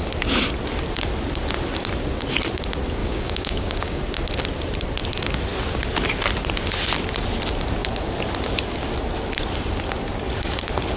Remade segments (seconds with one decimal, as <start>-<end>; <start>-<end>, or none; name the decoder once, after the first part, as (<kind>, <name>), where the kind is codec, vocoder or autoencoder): 3.0-4.0 (codec, DAC)